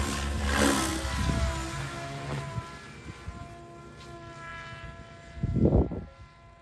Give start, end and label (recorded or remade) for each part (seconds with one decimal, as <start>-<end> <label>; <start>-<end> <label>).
0.0-6.6 recorded